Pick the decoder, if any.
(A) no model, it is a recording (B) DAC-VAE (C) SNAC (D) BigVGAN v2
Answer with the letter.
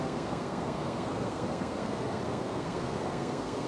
C